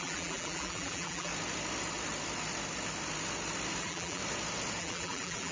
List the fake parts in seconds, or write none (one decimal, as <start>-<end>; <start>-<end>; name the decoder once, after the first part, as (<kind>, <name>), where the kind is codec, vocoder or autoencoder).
0.0-1.3 (vocoder, BigVGAN v2); 3.8-4.2; 4.8-5.5

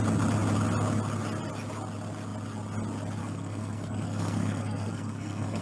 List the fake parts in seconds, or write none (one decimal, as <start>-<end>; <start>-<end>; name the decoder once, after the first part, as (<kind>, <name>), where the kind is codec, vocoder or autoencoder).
3.2-5.6 (codec, SNAC)

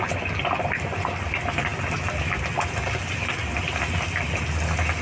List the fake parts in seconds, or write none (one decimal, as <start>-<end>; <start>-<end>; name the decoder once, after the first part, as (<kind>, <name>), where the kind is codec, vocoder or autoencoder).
none